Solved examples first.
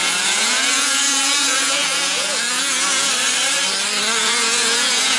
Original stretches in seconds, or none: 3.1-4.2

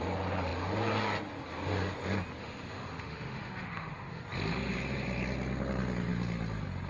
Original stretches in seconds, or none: 0.0-2.4; 4.2-6.9

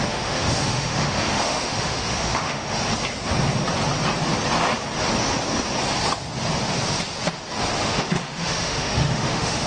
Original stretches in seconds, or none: 2.8-7.8